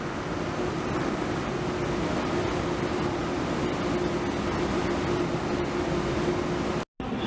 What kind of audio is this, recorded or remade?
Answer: recorded